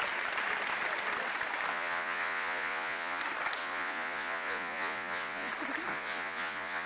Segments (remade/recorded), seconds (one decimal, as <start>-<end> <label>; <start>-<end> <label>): 0.0-1.7 recorded; 1.7-3.2 remade; 3.2-3.6 recorded; 3.6-5.5 remade; 5.5-5.9 recorded; 5.9-6.9 remade